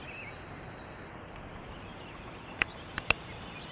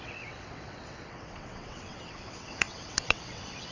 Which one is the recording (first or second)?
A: first